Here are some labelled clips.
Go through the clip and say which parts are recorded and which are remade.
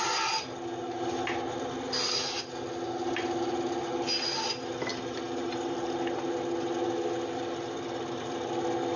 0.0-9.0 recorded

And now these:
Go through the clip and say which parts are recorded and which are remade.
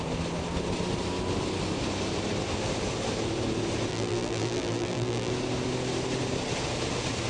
0.0-3.9 recorded; 3.9-5.3 remade; 5.3-7.3 recorded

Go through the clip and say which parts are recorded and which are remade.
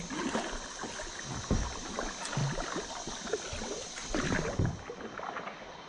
0.0-5.9 recorded